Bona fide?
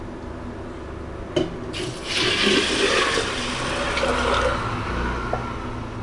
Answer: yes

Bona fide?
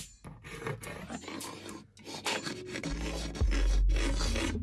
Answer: yes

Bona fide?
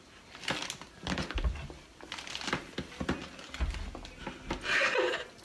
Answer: yes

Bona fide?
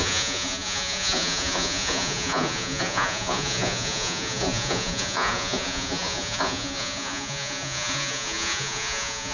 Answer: no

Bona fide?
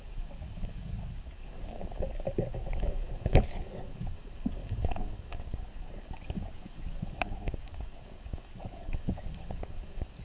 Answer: no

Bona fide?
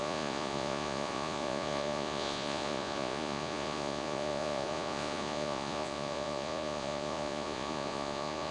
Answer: no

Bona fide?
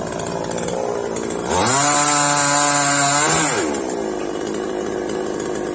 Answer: yes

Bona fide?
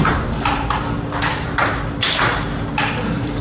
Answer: no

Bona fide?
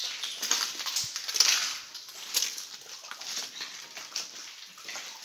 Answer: yes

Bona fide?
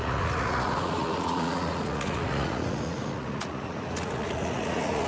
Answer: no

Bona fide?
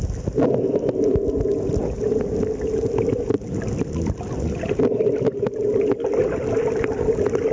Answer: yes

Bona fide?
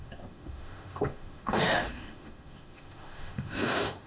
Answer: no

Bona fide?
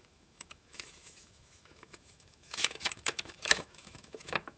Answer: no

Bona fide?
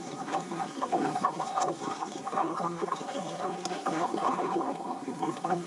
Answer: no